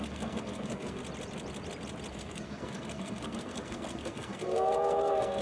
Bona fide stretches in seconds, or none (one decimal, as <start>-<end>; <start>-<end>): 1.0-2.1